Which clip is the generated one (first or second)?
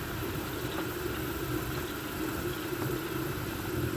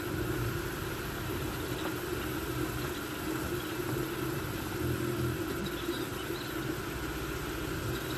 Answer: first